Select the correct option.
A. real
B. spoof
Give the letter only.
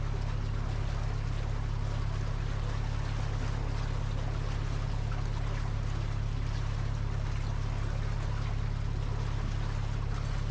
A